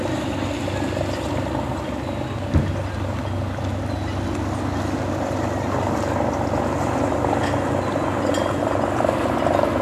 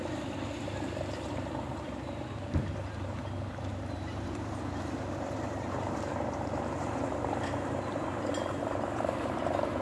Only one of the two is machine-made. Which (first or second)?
second